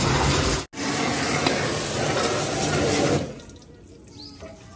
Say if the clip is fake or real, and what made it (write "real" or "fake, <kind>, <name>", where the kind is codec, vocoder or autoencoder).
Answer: real